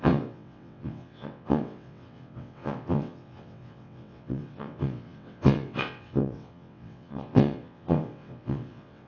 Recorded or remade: remade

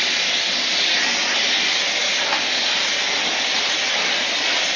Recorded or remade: recorded